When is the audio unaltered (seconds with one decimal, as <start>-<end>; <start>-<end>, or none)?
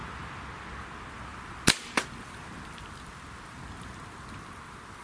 0.0-5.0